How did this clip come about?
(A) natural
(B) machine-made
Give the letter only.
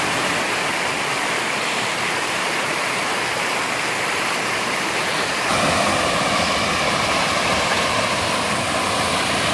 B